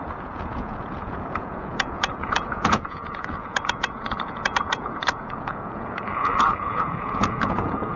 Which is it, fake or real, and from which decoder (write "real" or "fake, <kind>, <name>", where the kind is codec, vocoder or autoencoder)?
fake, vocoder, Vocos